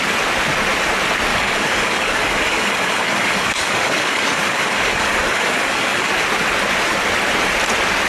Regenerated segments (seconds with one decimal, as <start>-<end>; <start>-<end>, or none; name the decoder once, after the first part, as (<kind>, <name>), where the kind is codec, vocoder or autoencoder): 1.3-6.1 (codec, DAC)